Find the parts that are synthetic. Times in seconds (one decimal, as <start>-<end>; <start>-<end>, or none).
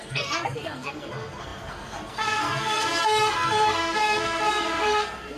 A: 0.0-5.4